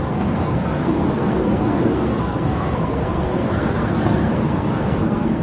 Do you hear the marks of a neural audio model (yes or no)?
yes